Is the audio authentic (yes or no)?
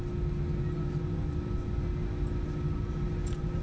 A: yes